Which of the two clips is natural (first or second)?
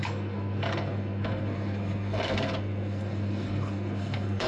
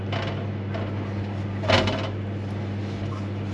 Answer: second